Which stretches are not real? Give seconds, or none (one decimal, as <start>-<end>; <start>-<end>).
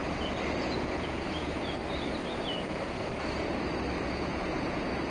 0.6-1.8; 2.7-3.1; 4.0-5.1